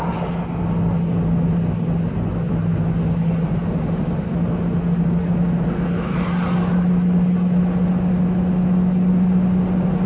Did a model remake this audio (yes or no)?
no